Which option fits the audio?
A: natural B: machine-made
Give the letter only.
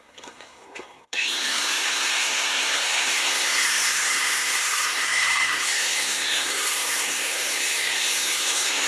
B